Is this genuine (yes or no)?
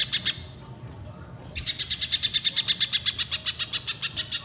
yes